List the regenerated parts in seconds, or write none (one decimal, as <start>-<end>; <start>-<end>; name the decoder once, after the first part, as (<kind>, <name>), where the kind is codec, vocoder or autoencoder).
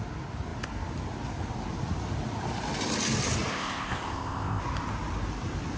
3.5-4.6 (codec, ZipCodec)